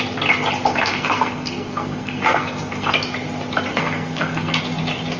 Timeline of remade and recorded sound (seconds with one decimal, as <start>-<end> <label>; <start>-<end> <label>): 0.0-0.7 recorded; 0.7-2.9 remade; 2.9-3.7 recorded; 3.7-4.6 remade; 4.6-5.2 recorded